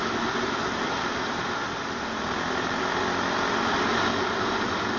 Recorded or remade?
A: recorded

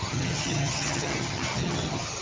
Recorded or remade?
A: remade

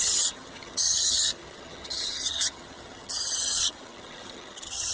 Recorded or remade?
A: remade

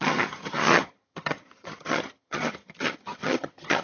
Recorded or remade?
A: remade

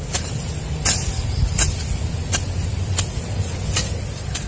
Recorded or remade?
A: recorded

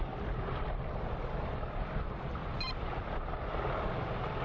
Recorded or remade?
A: recorded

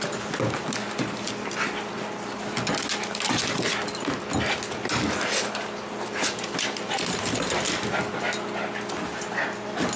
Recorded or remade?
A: recorded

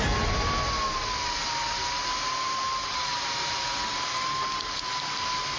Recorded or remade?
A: recorded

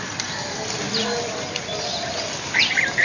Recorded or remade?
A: recorded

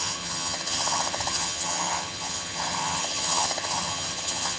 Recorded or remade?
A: remade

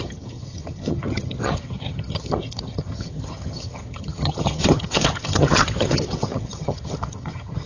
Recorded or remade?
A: remade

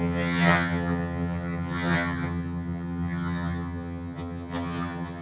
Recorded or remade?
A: remade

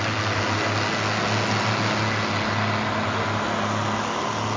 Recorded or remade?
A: recorded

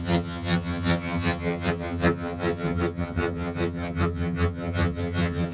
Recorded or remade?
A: remade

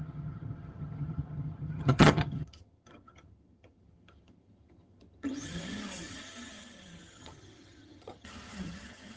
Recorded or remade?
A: remade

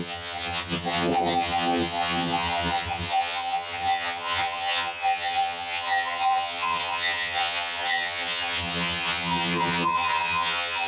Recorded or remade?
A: remade